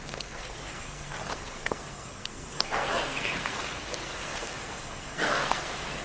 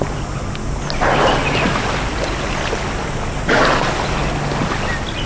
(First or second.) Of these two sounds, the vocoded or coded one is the first